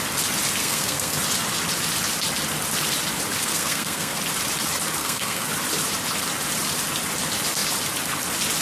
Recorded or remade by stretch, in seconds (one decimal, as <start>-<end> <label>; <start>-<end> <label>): 0.0-0.6 recorded; 0.6-1.2 remade; 1.2-3.4 recorded; 3.4-4.2 remade; 4.2-5.0 recorded; 5.0-5.5 remade; 5.5-8.6 recorded